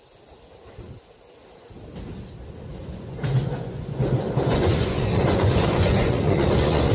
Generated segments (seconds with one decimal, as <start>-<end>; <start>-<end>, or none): 2.7-6.9